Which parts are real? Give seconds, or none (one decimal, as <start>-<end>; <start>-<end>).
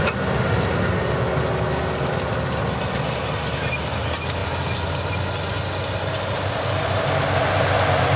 0.0-8.2